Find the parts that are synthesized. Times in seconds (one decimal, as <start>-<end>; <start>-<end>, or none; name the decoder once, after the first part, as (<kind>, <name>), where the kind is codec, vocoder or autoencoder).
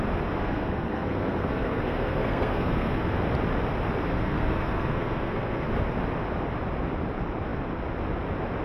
0.4-3.1 (codec, SNAC); 4.1-5.7